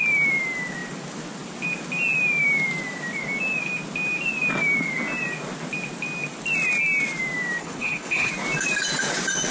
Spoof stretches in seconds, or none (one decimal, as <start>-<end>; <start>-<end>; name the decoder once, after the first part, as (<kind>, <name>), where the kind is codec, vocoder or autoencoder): 7.6-8.3 (codec, HILCodec)